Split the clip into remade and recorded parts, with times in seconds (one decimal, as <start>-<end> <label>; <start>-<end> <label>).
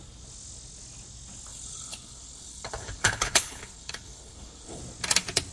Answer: 0.0-1.5 recorded; 1.5-4.8 remade; 4.8-5.5 recorded